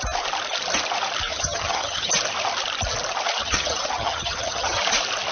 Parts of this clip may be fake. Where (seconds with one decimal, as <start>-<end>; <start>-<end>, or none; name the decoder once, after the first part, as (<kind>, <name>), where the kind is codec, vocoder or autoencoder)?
1.3-2.1 (vocoder, HiFi-GAN); 3.4-4.8